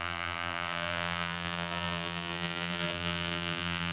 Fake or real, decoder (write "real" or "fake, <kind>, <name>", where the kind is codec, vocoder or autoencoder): fake, vocoder, BigVGAN v2